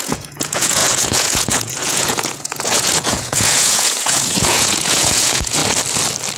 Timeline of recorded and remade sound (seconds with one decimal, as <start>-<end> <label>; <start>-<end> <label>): 0.0-5.6 remade; 5.6-6.4 recorded